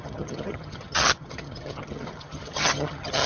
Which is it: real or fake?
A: fake